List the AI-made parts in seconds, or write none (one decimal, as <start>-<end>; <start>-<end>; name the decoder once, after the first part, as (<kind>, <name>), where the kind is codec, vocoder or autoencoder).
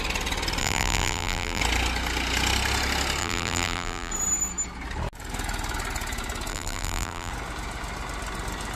0.6-1.6 (vocoder, BigVGAN v2); 3.2-4.1; 6.5-7.3